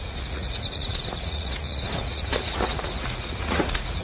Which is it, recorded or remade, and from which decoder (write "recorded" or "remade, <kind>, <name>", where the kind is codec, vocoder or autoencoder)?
remade, vocoder, Vocos